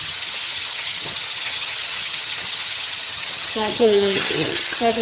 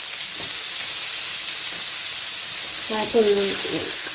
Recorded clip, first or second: second